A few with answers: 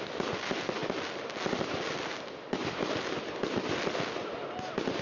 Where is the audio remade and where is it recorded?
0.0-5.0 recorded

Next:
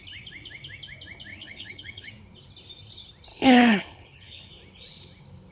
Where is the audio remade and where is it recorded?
0.0-1.3 recorded; 1.3-2.1 remade; 2.1-3.3 recorded; 3.3-4.5 remade; 4.5-5.5 recorded

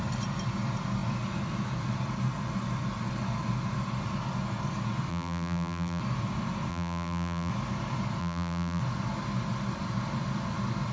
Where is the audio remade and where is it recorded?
0.0-5.1 recorded; 5.1-6.0 remade; 6.0-6.7 recorded; 6.7-7.5 remade; 7.5-8.2 recorded; 8.2-8.8 remade; 8.8-10.9 recorded

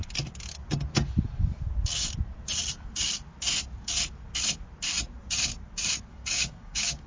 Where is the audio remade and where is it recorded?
0.0-6.1 recorded; 6.1-7.1 remade

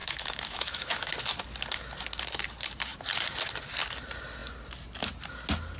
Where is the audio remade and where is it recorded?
0.0-1.1 remade; 1.1-5.8 recorded

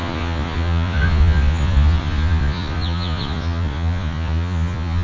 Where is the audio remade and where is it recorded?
0.0-5.0 remade

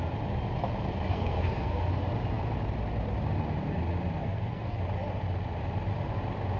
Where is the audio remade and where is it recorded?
0.0-1.1 recorded; 1.1-1.9 remade; 1.9-4.2 recorded; 4.2-4.8 remade; 4.8-6.6 recorded

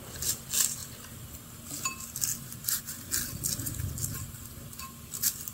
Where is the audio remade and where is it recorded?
0.0-5.5 recorded